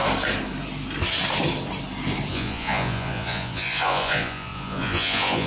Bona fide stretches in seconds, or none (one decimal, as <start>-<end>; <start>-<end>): 0.0-2.3